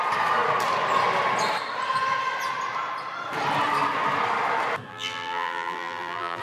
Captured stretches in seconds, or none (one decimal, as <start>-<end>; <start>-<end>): 0.0-4.9